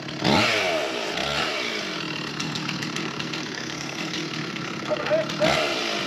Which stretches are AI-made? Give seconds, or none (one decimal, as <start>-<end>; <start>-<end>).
2.3-5.1